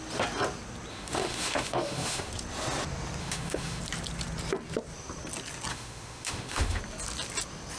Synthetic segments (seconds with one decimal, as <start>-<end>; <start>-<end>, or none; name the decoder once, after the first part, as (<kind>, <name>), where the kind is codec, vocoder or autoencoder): 0.9-2.3 (autoencoder, DAC-VAE); 3.2-3.8; 5.7-6.8